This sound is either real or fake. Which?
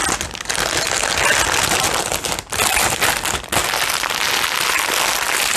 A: real